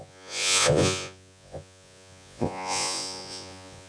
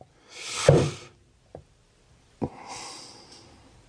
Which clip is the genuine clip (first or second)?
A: second